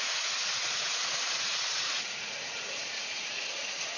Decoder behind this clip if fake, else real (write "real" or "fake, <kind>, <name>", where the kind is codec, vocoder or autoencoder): fake, vocoder, Vocos